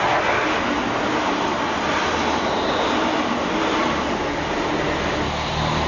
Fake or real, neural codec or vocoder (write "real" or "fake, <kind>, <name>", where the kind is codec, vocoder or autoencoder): real